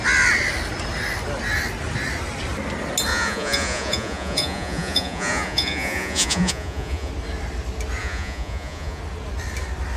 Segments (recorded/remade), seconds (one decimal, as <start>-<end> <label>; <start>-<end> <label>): 0.0-3.1 recorded; 3.1-7.1 remade; 7.1-8.0 recorded; 8.0-9.0 remade; 9.0-10.0 recorded